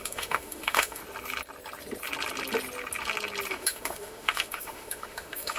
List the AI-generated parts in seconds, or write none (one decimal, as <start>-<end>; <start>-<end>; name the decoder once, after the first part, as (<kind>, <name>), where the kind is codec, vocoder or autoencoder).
0.0-1.0 (autoencoder, DAC-VAE); 3.5-5.6